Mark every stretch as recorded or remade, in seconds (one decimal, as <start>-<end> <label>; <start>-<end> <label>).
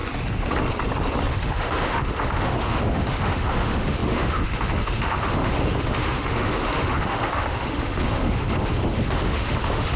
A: 0.0-1.3 recorded; 1.3-10.0 remade